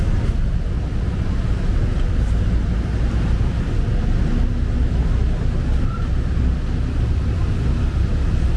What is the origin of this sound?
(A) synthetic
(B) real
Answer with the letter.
B